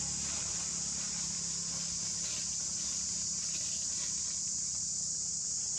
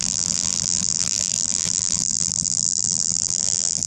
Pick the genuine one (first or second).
first